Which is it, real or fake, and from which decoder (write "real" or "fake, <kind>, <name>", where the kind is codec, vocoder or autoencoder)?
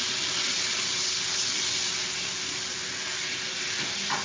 real